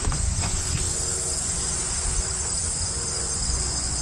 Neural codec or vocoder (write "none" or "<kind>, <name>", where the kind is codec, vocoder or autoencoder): vocoder, Vocos